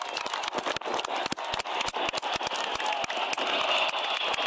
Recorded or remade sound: recorded